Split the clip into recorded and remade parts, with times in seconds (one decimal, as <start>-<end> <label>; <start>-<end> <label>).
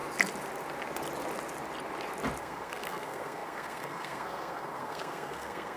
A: 0.0-2.4 recorded; 2.4-5.8 remade